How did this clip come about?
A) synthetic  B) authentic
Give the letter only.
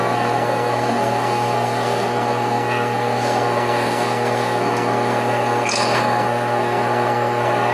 A